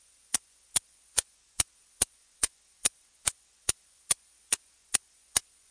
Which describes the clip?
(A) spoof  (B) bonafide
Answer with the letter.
A